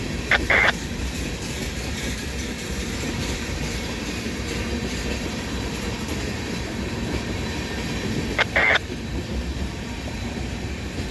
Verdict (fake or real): fake